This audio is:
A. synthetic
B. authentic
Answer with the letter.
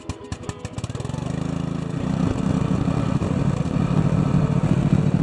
B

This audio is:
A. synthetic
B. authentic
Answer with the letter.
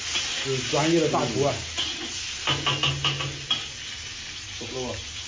B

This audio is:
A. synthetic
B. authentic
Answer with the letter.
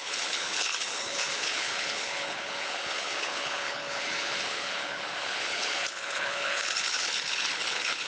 A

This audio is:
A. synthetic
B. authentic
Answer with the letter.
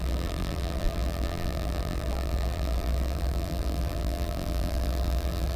A